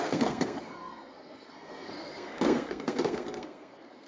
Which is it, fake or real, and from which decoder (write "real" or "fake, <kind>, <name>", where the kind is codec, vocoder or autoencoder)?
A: fake, codec, SNAC